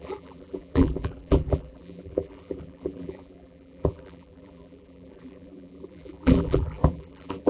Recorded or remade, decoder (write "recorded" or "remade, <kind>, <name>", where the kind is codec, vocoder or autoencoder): remade, vocoder, BigVGAN v2